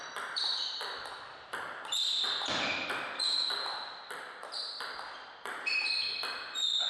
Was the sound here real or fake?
fake